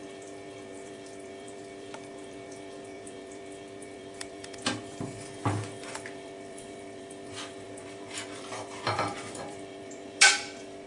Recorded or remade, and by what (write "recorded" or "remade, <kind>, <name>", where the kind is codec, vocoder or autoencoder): remade, vocoder, BigVGAN v2